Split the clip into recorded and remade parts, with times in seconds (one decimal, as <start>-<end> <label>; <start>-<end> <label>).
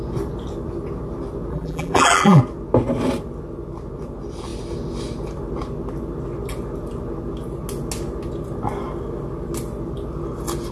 0.0-1.5 recorded; 1.5-2.4 remade; 2.4-10.7 recorded